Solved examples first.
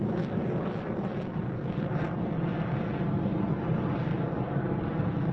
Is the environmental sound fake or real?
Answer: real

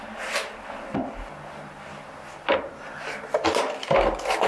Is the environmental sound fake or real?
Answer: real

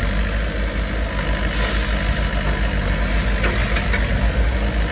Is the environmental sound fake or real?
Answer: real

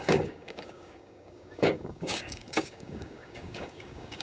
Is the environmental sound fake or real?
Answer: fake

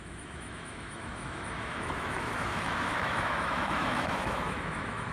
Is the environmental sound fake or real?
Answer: fake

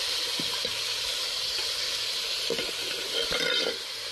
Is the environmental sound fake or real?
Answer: real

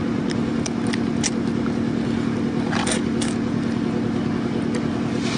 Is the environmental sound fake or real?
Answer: real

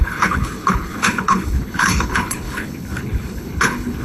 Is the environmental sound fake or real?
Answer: fake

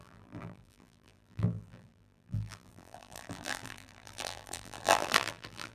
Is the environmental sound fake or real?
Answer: fake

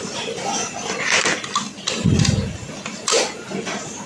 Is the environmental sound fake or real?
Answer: real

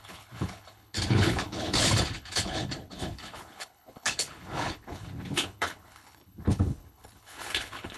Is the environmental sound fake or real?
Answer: fake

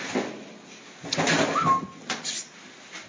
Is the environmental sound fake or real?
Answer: real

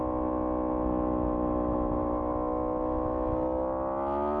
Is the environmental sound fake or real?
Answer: real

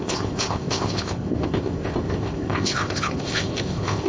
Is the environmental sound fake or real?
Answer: fake